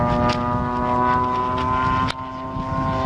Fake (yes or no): no